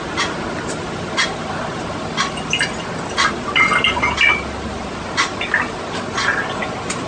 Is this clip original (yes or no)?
yes